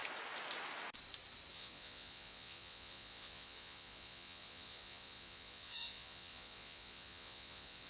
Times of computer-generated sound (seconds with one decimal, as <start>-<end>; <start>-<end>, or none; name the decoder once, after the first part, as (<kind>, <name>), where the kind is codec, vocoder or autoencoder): 1.5-7.9 (vocoder, Vocos)